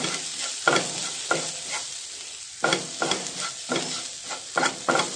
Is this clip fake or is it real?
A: real